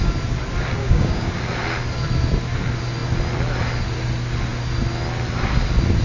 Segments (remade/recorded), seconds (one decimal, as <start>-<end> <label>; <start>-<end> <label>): 0.0-0.8 recorded; 0.8-1.4 remade; 1.4-6.0 recorded